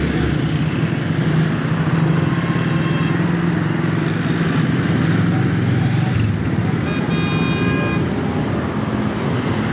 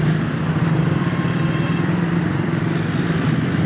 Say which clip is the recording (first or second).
first